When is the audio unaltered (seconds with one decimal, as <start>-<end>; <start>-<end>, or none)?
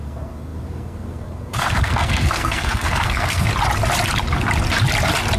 3.5-5.4